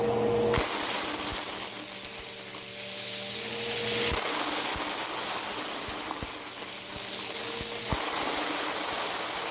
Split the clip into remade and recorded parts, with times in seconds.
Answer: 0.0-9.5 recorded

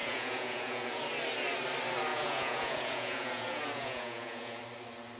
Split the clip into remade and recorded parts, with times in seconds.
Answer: 0.0-1.0 remade; 1.0-2.1 recorded; 2.1-4.6 remade; 4.6-5.2 recorded

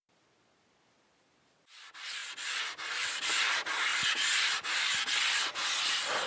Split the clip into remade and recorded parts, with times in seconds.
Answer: 0.0-6.3 recorded

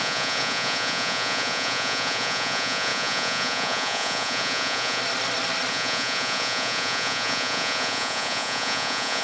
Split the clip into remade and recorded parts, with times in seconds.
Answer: 0.0-5.0 remade; 5.0-5.7 recorded; 5.7-9.2 remade